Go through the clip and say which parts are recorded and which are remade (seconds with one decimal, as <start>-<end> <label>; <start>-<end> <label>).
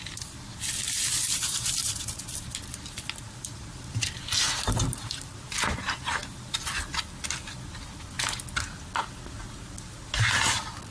0.0-1.8 recorded; 1.8-5.3 remade; 5.3-10.9 recorded